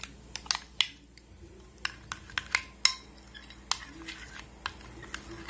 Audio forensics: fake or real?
real